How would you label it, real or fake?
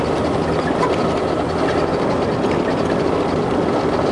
real